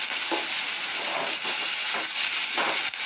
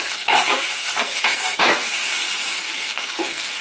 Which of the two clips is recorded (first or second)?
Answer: first